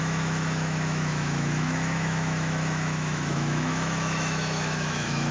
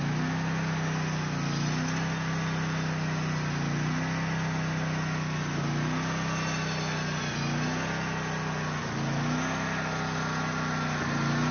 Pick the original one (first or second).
second